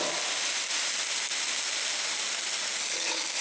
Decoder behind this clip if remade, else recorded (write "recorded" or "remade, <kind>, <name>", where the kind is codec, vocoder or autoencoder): recorded